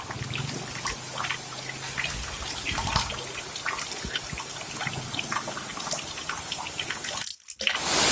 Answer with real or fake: real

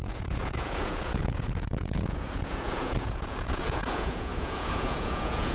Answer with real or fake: fake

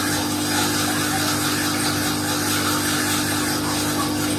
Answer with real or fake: real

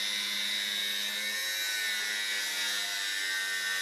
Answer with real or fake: real